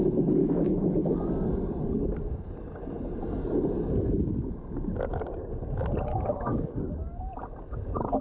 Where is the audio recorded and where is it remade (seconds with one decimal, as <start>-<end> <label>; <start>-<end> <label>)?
0.0-0.4 recorded; 0.4-1.3 remade; 1.3-6.1 recorded; 6.1-6.8 remade; 6.8-8.2 recorded